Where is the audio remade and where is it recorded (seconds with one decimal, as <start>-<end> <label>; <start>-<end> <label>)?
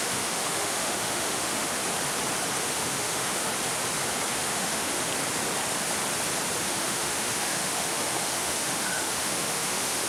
0.0-1.8 remade; 1.8-2.6 recorded; 2.6-3.5 remade; 3.5-4.3 recorded; 4.3-5.1 remade; 5.1-6.6 recorded; 6.6-10.1 remade